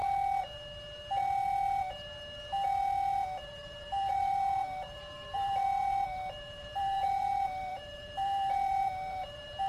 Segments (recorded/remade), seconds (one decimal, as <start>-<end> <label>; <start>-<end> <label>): 0.0-3.4 recorded; 3.4-9.7 remade